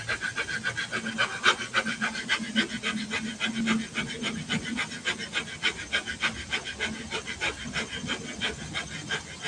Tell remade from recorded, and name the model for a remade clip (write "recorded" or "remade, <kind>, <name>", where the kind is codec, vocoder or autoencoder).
recorded